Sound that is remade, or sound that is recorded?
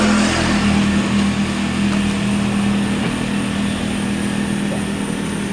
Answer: recorded